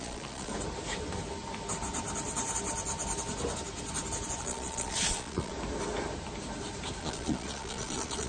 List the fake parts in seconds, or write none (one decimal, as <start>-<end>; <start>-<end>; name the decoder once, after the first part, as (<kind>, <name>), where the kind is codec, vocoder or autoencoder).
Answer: 0.0-0.5 (vocoder, Vocos); 4.4-5.5; 7.0-8.3